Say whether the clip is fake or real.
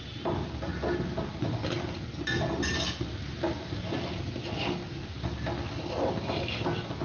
real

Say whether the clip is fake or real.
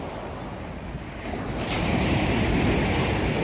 real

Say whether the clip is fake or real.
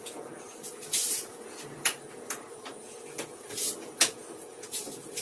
fake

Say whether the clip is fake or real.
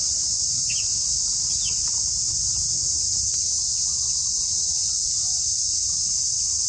real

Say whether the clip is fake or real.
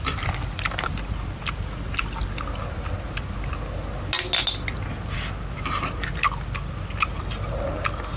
real